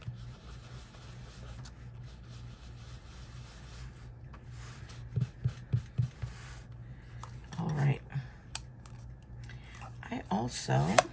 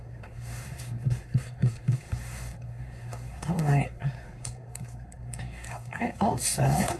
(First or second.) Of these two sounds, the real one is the first